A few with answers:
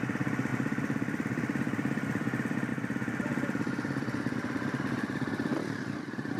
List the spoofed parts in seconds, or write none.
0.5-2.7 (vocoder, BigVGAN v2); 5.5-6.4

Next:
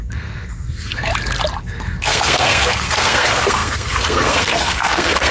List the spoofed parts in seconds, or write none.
0.0-1.1 (codec, SNAC); 1.6-5.3